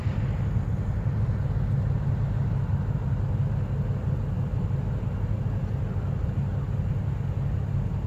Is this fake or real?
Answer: real